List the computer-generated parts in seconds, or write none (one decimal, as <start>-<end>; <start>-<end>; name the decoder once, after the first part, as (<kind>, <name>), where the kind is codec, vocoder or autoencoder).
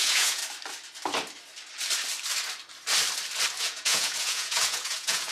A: 0.0-0.4 (vocoder, Vocos); 3.6-5.3